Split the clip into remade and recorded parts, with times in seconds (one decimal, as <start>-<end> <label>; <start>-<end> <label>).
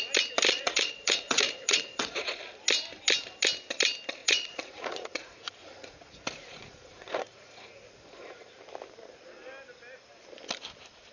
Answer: 0.0-0.5 recorded; 0.5-2.4 remade; 2.4-4.2 recorded; 4.2-8.6 remade; 8.6-11.1 recorded